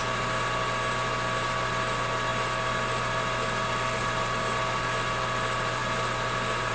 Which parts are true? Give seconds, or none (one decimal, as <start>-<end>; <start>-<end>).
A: 0.0-6.7